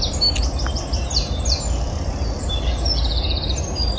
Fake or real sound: real